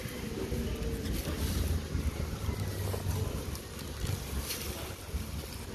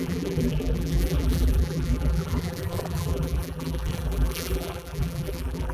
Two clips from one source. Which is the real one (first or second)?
first